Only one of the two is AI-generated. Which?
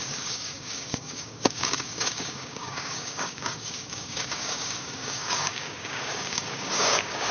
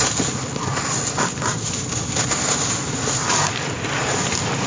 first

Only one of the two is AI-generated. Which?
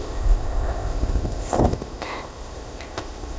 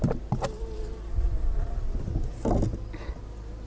first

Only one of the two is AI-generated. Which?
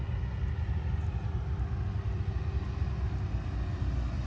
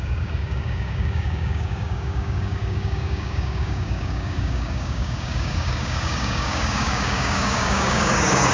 second